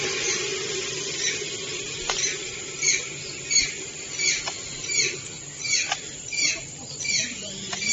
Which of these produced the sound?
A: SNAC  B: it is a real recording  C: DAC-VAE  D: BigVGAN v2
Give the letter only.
B